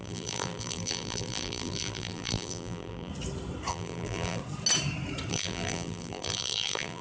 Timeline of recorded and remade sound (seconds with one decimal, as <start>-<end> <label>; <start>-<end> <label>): 0.0-3.1 remade; 3.1-3.7 recorded; 3.7-4.4 remade; 4.4-5.3 recorded; 5.3-7.0 remade